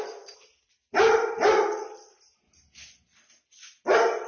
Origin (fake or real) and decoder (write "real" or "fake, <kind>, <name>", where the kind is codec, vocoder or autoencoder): real